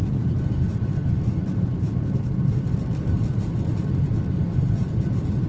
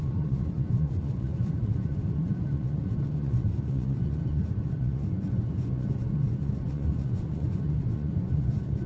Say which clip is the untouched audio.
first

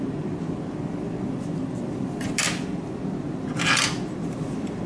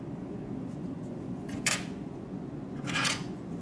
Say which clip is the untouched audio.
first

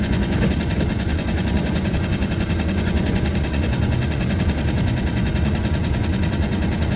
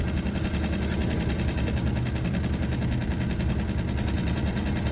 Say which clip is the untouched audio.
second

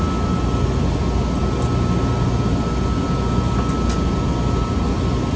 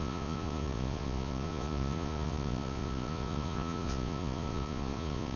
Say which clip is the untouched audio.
first